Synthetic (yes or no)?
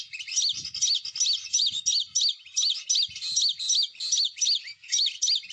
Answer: no